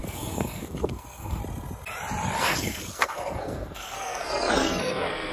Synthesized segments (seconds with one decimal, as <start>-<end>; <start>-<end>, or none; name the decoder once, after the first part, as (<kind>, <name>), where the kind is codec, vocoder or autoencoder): 0.0-1.4 (codec, SNAC); 2.4-5.3